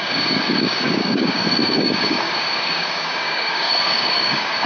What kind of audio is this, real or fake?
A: fake